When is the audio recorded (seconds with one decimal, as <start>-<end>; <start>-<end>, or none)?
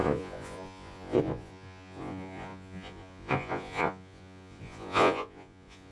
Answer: none